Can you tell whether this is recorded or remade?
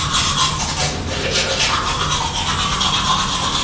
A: recorded